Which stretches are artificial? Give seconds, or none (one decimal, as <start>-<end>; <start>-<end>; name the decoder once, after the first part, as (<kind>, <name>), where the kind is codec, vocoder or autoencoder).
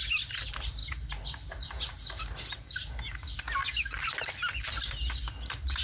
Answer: none